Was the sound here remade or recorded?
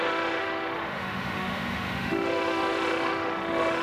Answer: remade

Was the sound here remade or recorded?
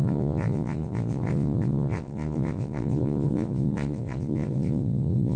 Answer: remade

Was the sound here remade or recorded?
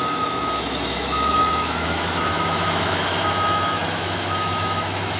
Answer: remade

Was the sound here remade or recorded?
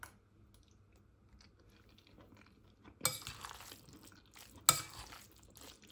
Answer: recorded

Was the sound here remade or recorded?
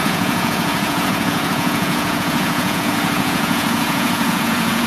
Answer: remade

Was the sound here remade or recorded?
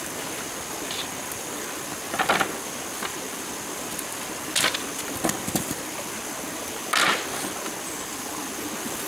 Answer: recorded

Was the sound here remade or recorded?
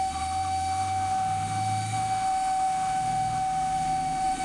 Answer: remade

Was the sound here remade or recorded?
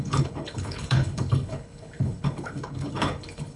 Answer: remade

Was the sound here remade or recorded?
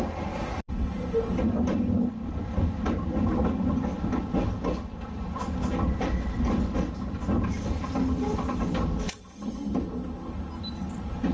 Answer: recorded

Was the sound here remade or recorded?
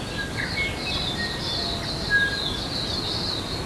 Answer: recorded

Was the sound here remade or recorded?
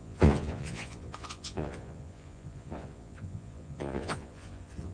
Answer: remade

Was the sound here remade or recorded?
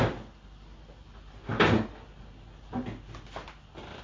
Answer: recorded